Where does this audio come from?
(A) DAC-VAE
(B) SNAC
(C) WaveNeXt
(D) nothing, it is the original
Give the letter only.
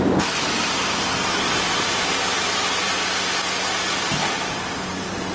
D